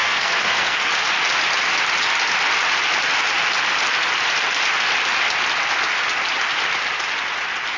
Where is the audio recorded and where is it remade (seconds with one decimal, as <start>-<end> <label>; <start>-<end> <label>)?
0.0-0.9 remade; 0.9-7.8 recorded